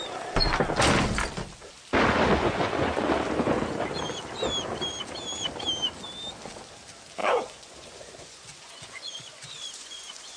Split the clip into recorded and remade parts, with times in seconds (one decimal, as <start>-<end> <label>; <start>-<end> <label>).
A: 0.0-2.3 recorded; 2.3-3.1 remade; 3.1-7.2 recorded; 7.2-10.4 remade